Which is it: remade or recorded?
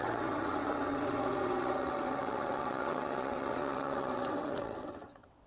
remade